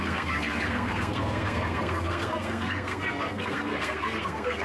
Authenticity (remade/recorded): remade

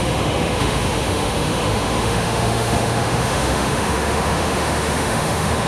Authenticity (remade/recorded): remade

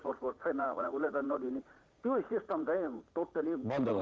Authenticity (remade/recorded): remade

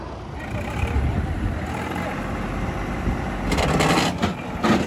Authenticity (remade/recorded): recorded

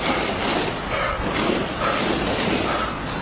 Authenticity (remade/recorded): recorded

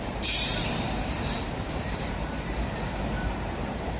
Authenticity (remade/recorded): remade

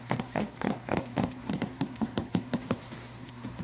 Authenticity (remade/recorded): remade